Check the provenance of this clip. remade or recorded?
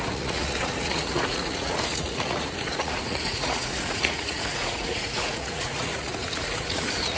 remade